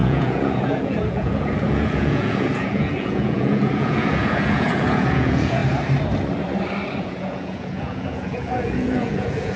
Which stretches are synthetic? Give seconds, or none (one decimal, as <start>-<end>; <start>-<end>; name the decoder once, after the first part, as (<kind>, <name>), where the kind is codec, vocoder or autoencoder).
0.0-5.6 (vocoder, Vocos); 7.0-9.6